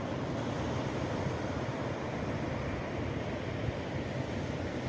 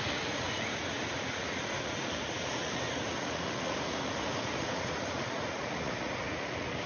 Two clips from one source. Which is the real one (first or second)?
first